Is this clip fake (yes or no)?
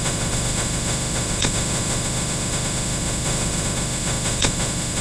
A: yes